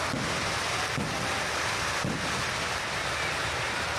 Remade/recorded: recorded